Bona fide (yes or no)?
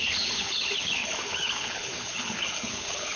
no